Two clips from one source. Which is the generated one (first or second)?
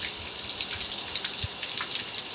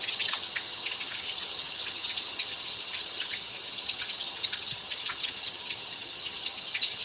second